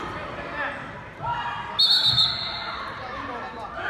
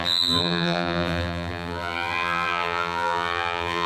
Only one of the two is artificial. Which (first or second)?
second